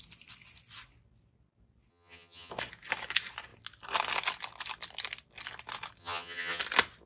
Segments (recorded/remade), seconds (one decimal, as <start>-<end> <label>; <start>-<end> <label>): 0.0-1.9 recorded; 1.9-2.5 remade; 2.5-6.0 recorded; 6.0-6.6 remade; 6.6-7.1 recorded